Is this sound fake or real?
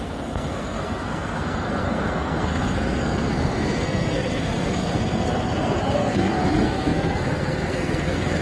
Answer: fake